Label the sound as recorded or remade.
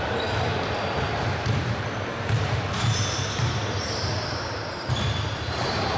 remade